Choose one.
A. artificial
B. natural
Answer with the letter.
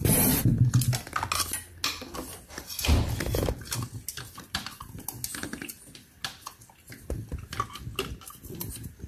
B